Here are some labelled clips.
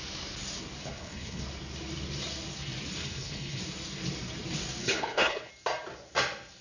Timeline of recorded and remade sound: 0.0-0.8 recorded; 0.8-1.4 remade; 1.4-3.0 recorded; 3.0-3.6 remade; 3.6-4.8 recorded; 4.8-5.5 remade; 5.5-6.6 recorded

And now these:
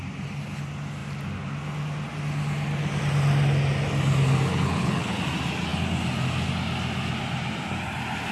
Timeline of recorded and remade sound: 0.0-4.5 recorded; 4.5-5.2 remade; 5.2-8.3 recorded

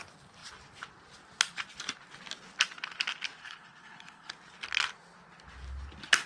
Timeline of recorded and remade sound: 0.0-3.4 recorded; 3.4-4.3 remade; 4.3-6.3 recorded

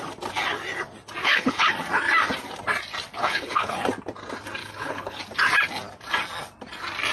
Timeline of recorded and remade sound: 0.0-1.2 recorded; 1.2-1.7 remade; 1.7-3.2 recorded; 3.2-3.8 remade; 3.8-4.6 recorded; 4.6-5.2 remade; 5.2-7.1 recorded

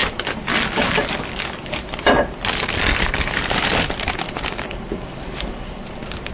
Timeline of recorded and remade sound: 0.0-6.3 recorded

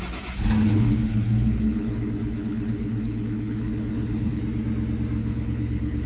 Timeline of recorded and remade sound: 0.0-0.7 recorded; 0.7-4.4 remade; 4.4-5.2 recorded; 5.2-6.1 remade